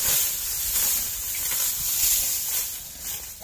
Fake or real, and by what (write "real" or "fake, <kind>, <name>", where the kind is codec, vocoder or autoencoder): real